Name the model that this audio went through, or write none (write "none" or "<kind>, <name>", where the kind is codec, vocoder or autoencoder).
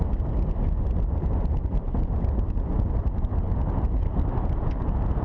none